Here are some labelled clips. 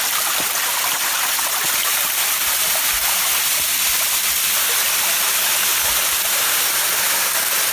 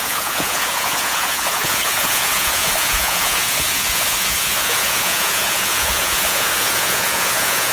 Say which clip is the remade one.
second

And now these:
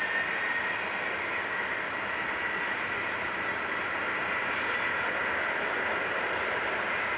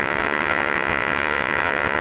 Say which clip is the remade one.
second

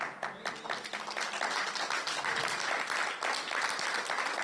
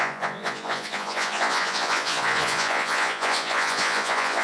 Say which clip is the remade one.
second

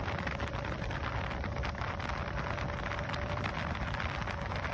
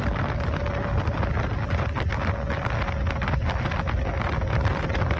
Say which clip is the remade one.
first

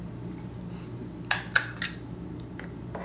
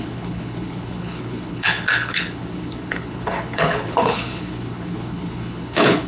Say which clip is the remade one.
second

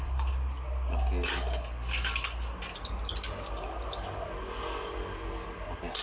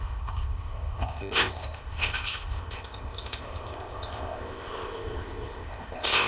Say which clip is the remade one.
second